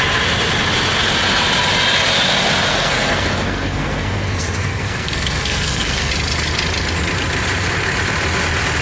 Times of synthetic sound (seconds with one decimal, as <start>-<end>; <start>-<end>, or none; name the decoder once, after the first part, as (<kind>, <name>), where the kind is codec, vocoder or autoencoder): 2.7-6.1 (codec, SNAC)